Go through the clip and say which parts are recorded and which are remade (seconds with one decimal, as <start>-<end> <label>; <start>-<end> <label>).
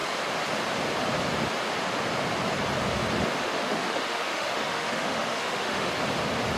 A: 0.0-3.4 recorded; 3.4-5.9 remade; 5.9-6.6 recorded